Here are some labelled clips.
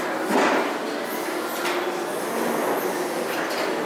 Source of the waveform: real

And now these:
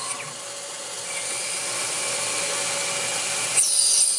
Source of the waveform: real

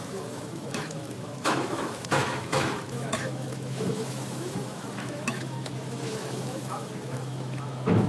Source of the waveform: fake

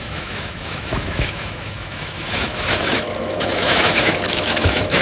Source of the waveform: fake